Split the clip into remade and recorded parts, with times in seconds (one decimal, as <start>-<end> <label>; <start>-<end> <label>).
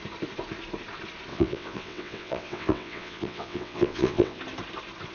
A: 0.0-1.3 recorded; 1.3-4.4 remade; 4.4-5.1 recorded